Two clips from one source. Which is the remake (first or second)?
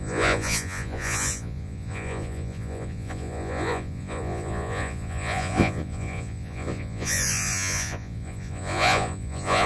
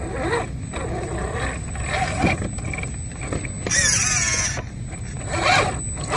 first